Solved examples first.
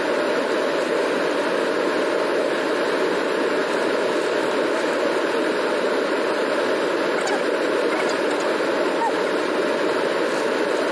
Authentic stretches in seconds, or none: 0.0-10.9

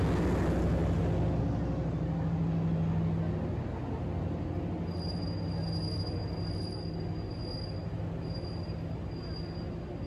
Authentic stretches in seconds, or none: 0.0-10.1

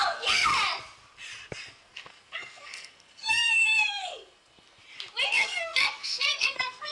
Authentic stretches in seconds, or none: 0.5-1.7; 4.8-5.3